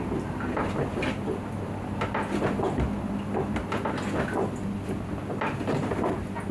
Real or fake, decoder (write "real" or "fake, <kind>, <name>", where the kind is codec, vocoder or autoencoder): real